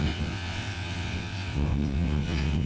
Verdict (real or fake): fake